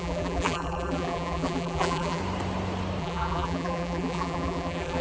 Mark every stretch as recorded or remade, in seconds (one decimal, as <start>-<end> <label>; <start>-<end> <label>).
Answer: 0.0-2.2 remade; 2.2-3.0 recorded; 3.0-5.0 remade